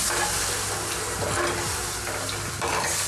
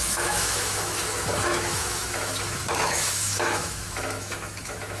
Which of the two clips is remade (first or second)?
second